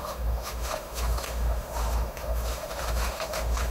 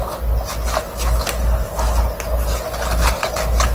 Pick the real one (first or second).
second